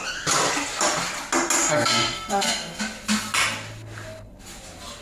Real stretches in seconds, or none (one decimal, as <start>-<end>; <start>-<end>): 0.0-1.6; 2.8-5.0